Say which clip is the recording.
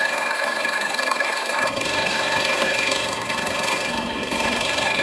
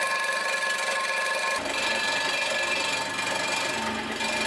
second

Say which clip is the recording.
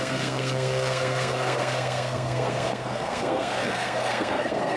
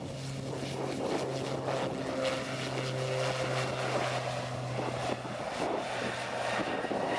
second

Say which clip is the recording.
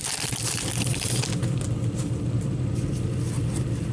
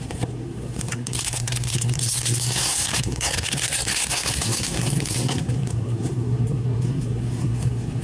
first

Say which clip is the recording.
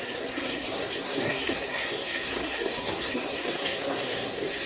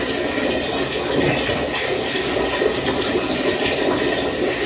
second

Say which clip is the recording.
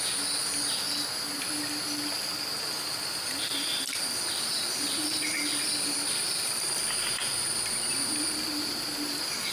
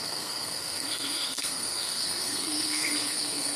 first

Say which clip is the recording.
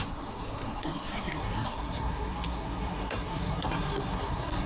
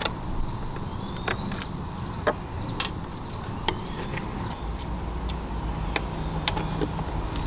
second